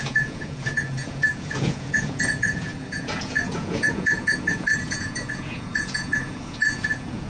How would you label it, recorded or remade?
remade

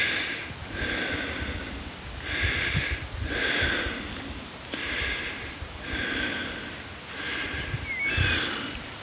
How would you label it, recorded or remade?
recorded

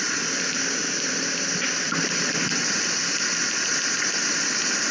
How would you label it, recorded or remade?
recorded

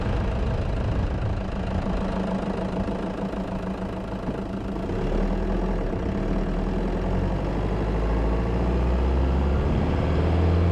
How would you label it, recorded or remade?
recorded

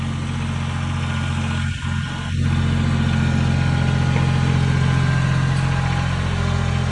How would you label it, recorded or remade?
recorded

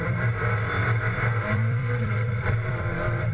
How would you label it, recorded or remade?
remade